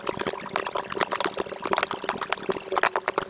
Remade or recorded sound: recorded